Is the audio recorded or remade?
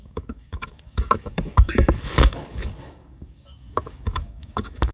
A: remade